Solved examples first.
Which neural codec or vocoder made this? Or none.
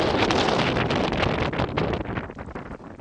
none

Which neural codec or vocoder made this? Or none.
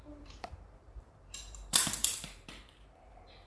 vocoder, BigVGAN v2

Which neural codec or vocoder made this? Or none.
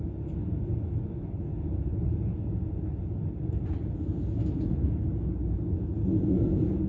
none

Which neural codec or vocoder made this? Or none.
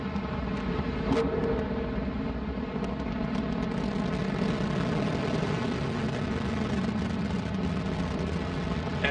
none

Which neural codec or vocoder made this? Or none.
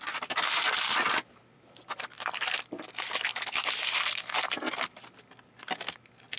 none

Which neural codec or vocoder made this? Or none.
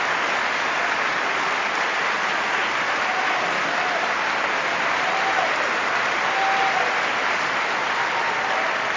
none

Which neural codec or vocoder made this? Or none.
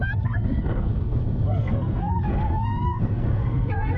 codec, SNAC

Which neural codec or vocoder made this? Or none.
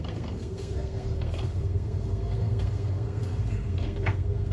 codec, SNAC